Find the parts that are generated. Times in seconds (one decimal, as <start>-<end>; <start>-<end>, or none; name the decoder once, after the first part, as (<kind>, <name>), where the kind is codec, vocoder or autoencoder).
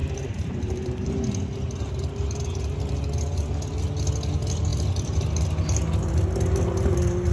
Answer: 0.0-1.1 (vocoder, BigVGAN v2)